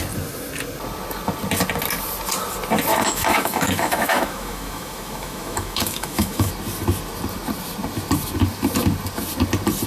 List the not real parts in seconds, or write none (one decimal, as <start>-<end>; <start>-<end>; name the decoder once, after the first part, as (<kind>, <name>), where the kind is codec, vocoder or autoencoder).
2.9-6.5 (autoencoder, DAC-VAE)